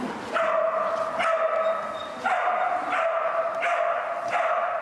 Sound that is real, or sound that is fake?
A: real